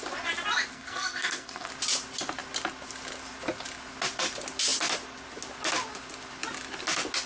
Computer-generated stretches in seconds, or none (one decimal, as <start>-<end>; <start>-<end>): 0.7-1.7